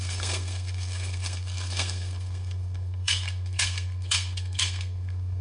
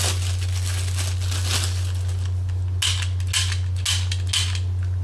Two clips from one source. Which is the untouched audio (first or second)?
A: second